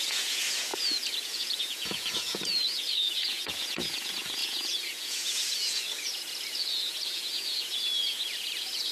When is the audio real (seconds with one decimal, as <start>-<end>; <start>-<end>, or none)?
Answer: none